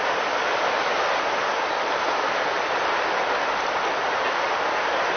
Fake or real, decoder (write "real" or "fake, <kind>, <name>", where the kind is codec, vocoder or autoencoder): real